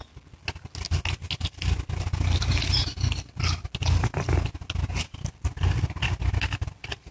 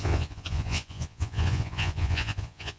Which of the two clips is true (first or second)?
first